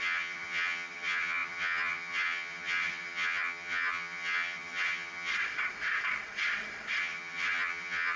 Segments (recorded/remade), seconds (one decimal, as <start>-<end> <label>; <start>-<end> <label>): 0.0-5.3 remade; 5.3-7.0 recorded; 7.0-8.2 remade